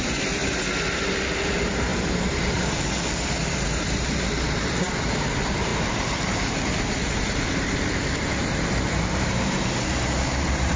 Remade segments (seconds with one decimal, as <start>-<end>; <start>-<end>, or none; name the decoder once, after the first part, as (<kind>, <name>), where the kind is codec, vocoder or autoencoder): 0.0-0.4 (vocoder, BigVGAN v2); 1.3-10.8